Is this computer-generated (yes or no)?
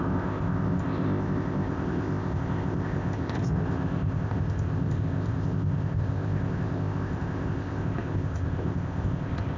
yes